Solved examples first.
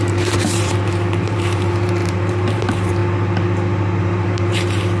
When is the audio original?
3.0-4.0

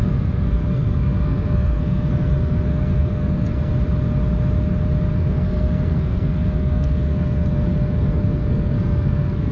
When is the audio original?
3.7-5.1

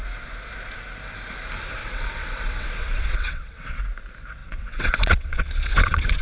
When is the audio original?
0.0-1.8; 3.8-4.4

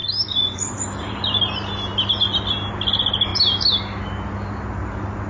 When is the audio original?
1.1-5.3

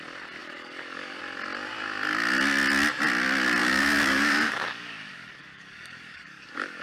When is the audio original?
0.0-0.4; 1.2-3.6

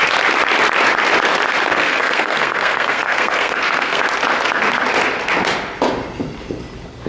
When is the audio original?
0.0-1.7; 4.0-7.1

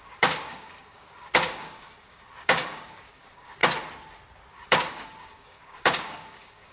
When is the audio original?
3.6-4.5